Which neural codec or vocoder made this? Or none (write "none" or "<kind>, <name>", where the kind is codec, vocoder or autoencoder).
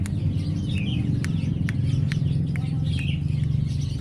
none